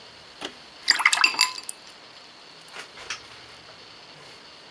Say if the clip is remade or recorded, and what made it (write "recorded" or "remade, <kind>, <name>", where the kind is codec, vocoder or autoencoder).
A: recorded